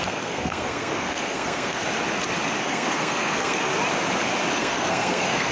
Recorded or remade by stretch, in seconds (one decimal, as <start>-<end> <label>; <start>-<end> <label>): 0.0-1.8 remade; 1.8-2.6 recorded; 2.6-3.7 remade; 3.7-4.5 recorded; 4.5-5.5 remade

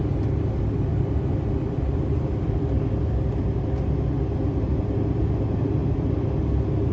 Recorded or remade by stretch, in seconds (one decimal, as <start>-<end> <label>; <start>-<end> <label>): 0.0-0.9 recorded; 0.9-3.0 remade; 3.0-6.9 recorded